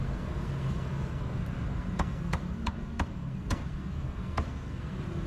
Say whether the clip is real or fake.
fake